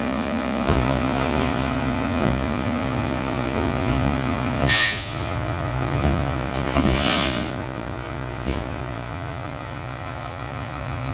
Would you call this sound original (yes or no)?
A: no